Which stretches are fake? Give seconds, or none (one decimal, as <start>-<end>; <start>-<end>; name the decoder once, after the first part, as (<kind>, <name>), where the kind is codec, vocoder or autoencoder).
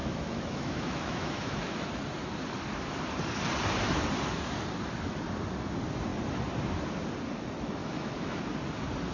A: 0.0-1.9 (autoencoder, DAC-VAE); 7.8-8.4